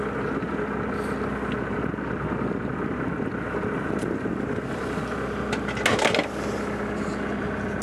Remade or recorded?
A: recorded